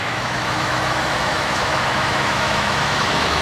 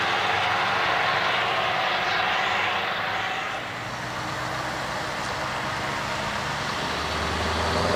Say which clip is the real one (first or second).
second